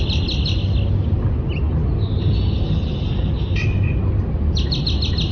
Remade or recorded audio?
recorded